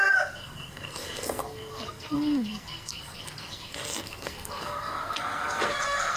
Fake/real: fake